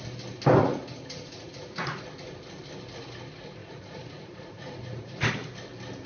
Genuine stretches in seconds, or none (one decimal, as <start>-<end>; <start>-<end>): 0.0-0.6; 2.1-3.6; 5.3-6.1

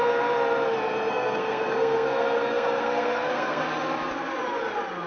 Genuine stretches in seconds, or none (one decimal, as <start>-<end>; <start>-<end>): 0.0-1.1; 3.6-5.1

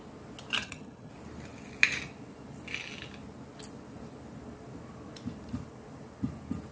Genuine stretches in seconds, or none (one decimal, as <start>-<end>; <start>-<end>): 0.0-0.6; 1.1-6.7

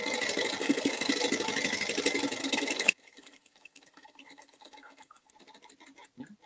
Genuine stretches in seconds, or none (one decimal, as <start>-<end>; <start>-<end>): 0.0-0.6; 1.1-2.4; 5.3-6.5

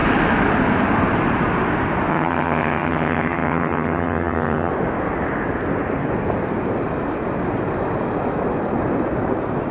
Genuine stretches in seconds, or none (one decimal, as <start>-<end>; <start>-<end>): 0.0-2.1; 4.7-9.7

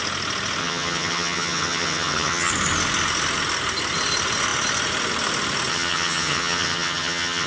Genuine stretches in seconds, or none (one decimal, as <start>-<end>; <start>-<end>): 0.0-0.6; 2.5-5.7